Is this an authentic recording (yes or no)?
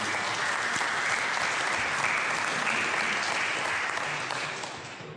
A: yes